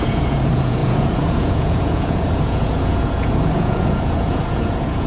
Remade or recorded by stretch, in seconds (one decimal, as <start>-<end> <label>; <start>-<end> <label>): 0.0-5.1 remade